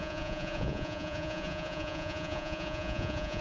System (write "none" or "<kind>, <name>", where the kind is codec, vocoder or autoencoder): vocoder, Vocos